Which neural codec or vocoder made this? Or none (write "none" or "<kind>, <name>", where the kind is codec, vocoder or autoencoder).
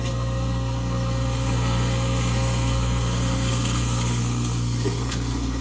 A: codec, SNAC